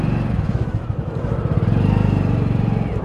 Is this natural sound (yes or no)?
yes